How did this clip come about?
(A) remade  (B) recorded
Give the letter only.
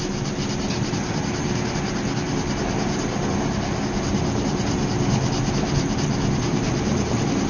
B